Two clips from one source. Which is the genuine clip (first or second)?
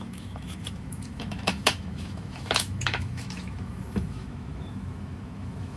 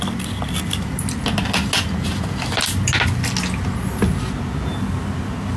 second